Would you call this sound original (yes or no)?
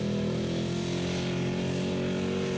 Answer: yes